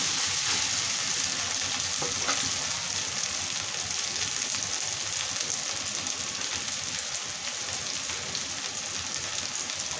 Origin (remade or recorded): recorded